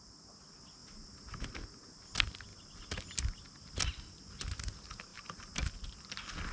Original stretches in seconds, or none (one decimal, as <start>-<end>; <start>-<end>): 0.0-6.5